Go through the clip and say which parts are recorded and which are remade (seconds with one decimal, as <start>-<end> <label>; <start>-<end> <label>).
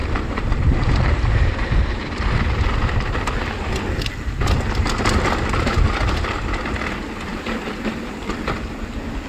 0.0-2.0 remade; 2.0-7.3 recorded; 7.3-8.2 remade; 8.2-9.3 recorded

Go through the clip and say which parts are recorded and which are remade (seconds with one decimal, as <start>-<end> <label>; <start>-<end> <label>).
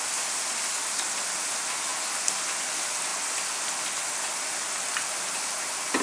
0.0-6.0 recorded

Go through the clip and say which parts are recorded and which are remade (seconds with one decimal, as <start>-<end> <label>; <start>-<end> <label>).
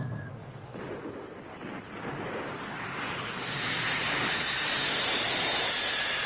0.0-6.3 recorded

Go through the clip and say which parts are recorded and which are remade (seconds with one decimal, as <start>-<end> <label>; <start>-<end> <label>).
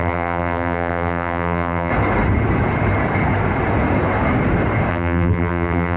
0.0-1.9 remade; 1.9-4.9 recorded; 4.9-6.0 remade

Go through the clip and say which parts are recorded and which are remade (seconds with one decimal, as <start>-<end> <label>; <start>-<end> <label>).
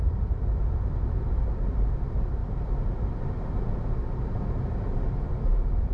0.0-5.9 remade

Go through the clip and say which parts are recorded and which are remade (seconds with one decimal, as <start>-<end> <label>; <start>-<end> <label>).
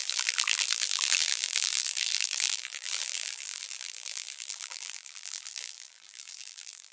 0.0-6.9 remade